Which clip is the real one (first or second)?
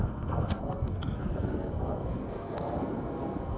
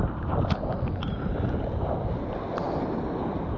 second